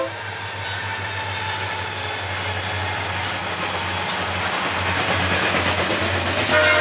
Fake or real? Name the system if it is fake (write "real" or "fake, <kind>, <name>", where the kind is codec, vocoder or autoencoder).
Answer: real